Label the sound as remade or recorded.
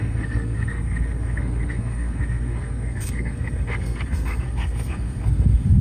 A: remade